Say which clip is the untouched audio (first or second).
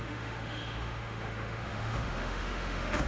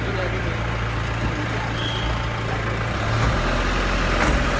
second